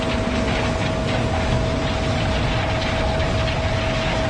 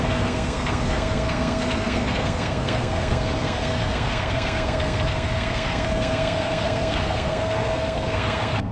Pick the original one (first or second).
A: first